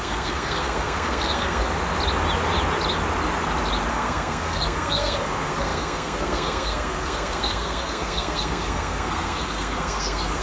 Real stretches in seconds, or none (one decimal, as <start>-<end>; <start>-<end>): 1.6-3.9